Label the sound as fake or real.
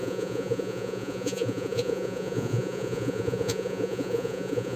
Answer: fake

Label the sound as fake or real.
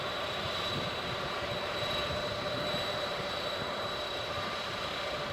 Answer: fake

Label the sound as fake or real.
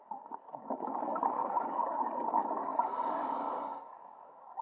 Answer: fake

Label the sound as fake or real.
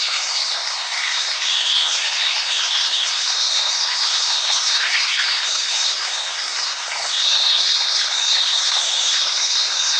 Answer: fake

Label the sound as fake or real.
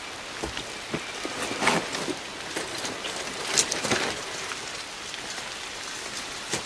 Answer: real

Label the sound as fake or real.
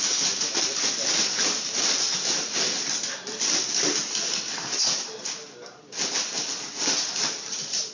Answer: real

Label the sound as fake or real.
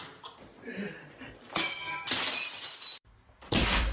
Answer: real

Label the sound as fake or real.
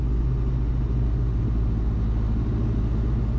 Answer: real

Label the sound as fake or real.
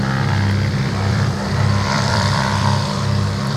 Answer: fake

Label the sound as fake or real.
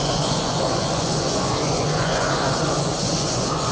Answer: fake